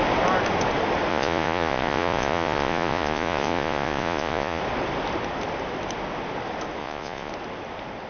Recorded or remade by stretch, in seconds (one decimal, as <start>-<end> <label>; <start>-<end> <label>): 0.0-1.1 recorded; 1.1-4.6 remade; 4.6-6.8 recorded; 6.8-7.3 remade; 7.3-8.1 recorded